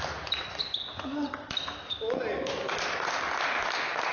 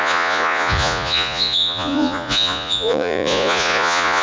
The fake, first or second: second